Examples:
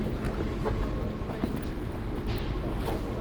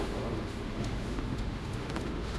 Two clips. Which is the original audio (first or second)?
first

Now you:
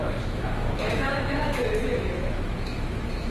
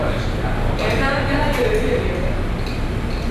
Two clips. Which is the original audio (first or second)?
second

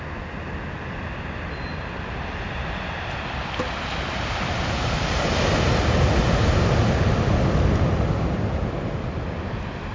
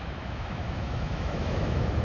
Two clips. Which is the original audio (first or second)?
first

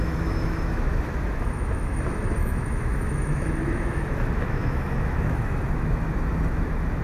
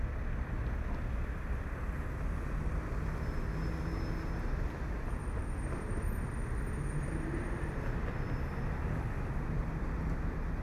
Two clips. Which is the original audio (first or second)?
second